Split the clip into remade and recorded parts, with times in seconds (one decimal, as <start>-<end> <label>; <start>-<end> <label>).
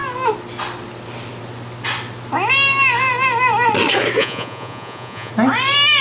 0.0-4.2 recorded; 4.2-5.3 remade; 5.3-6.0 recorded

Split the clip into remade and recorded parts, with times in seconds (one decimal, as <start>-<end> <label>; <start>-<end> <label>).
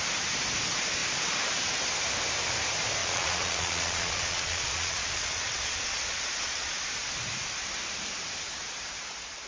0.0-3.0 recorded; 3.0-6.8 remade; 6.8-9.5 recorded